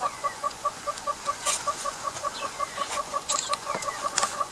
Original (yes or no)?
no